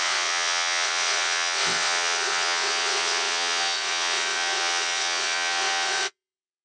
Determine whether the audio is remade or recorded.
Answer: remade